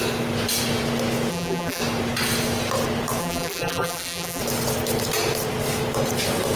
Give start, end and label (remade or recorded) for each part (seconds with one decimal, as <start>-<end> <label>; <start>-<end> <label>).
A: 0.0-1.3 recorded; 1.3-1.8 remade; 1.8-3.2 recorded; 3.2-4.4 remade; 4.4-6.6 recorded